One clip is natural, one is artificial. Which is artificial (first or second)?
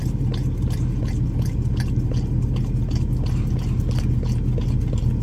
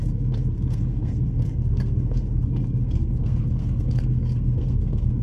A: second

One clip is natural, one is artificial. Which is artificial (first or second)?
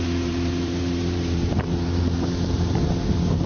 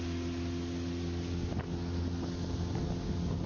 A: first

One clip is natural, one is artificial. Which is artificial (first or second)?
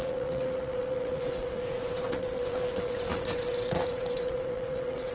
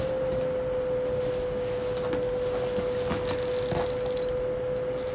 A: first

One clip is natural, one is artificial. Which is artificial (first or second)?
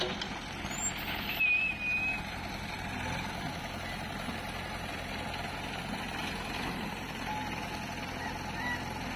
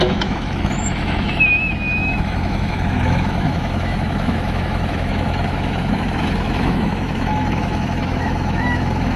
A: second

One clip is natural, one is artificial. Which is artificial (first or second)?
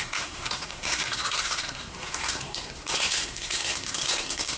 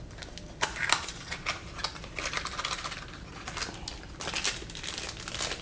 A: first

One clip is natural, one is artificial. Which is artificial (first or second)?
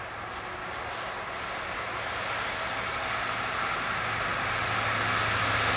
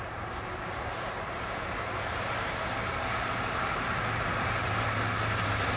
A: second